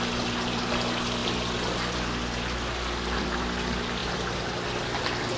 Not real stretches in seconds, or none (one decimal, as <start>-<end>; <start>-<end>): none